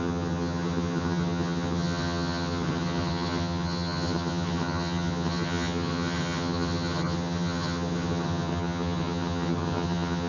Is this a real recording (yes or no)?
no